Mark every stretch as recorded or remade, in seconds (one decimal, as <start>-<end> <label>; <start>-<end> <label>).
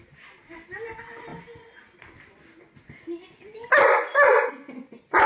0.0-5.3 recorded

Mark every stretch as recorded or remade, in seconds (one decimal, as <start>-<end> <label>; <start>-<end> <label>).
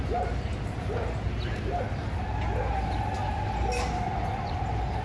0.0-5.0 recorded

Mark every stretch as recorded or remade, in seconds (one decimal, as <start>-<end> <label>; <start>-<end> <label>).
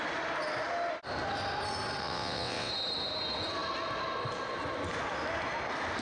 0.0-2.0 recorded; 2.0-2.7 remade; 2.7-6.0 recorded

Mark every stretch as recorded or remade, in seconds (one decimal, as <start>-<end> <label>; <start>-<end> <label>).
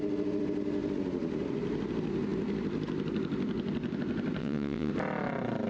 0.0-4.4 recorded; 4.4-4.9 remade; 4.9-5.7 recorded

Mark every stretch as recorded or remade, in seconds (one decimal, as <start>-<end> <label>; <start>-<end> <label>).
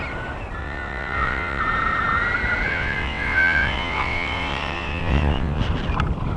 0.0-0.6 recorded; 0.6-1.6 remade; 1.6-2.7 recorded; 2.7-5.6 remade; 5.6-6.4 recorded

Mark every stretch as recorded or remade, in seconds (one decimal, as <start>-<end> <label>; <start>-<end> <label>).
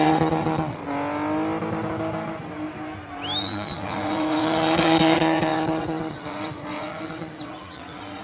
0.0-0.8 remade; 0.8-3.4 recorded; 3.4-8.2 remade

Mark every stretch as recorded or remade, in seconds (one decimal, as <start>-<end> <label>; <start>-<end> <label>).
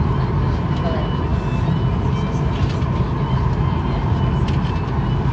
0.0-5.3 recorded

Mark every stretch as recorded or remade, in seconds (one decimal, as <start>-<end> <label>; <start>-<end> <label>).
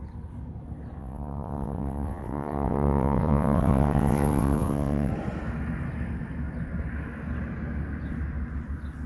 0.0-1.0 recorded; 1.0-5.1 remade; 5.1-9.1 recorded